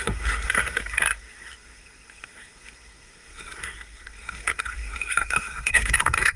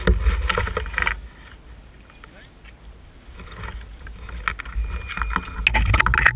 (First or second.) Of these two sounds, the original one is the second